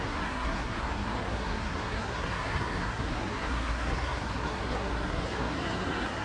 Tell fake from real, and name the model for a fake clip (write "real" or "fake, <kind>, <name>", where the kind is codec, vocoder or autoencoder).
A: fake, codec, SNAC